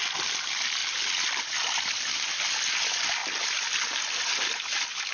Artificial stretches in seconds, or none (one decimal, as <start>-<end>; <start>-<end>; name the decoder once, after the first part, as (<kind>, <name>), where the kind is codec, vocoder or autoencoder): none